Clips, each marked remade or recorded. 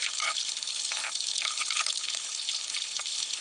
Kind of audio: remade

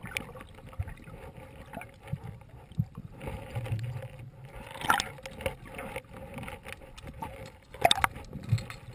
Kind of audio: recorded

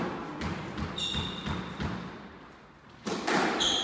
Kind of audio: recorded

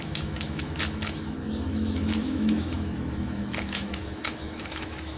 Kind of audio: remade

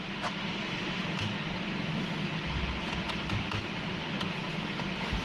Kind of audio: recorded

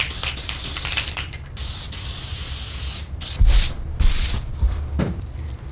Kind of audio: recorded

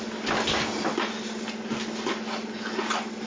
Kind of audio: recorded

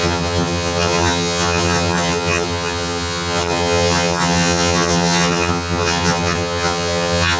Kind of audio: remade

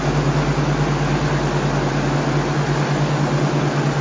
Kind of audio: recorded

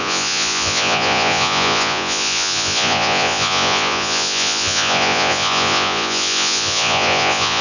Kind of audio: remade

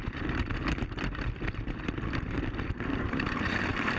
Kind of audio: remade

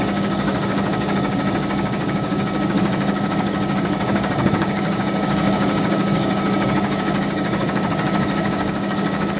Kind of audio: remade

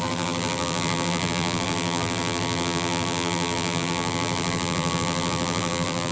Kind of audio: remade